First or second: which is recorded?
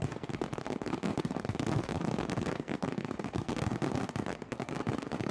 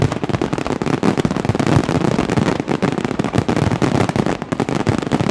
second